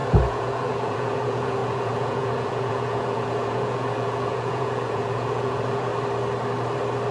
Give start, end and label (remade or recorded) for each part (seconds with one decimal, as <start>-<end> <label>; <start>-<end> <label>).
0.0-5.9 remade; 5.9-7.1 recorded